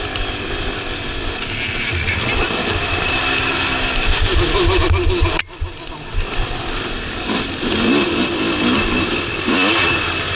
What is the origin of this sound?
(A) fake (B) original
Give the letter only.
B